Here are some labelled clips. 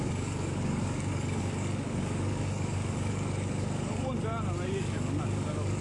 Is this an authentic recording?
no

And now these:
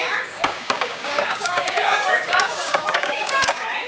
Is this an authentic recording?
no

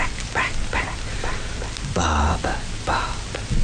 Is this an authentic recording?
yes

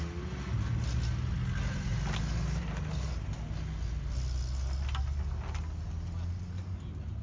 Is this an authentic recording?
yes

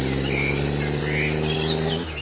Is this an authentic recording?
yes